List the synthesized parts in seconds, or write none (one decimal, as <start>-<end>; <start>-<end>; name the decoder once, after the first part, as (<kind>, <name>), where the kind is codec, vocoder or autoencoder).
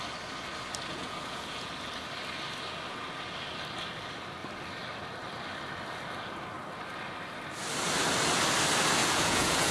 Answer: 0.9-1.7 (vocoder, Vocos); 9.0-9.7